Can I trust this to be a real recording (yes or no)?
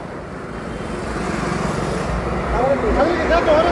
yes